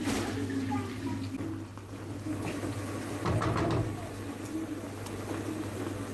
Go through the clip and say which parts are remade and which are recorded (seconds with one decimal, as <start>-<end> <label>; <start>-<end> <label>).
0.0-6.1 recorded